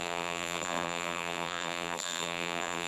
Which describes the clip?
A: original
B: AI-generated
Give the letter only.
B